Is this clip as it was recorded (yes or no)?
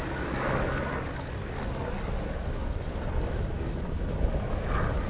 yes